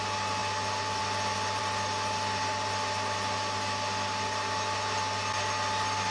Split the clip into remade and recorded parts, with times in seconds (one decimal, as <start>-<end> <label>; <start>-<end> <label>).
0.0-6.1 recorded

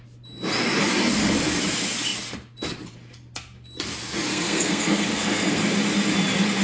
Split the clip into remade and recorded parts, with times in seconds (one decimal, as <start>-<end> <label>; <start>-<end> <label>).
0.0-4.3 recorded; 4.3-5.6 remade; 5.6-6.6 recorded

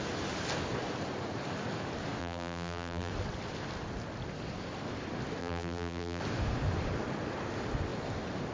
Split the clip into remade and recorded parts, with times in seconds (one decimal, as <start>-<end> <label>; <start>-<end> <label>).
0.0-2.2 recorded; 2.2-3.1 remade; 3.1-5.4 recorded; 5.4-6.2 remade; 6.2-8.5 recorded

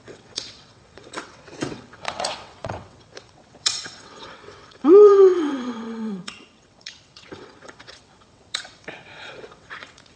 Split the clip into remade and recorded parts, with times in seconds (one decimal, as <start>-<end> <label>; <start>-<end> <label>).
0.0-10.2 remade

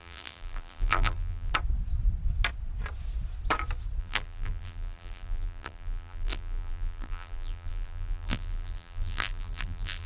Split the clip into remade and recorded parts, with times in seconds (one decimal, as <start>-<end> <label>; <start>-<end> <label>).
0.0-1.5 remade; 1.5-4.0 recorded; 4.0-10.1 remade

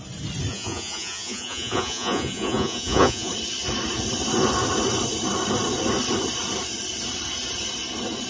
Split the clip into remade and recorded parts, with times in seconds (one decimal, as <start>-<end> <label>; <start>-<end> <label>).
0.0-0.5 recorded; 0.5-3.3 remade; 3.3-8.3 recorded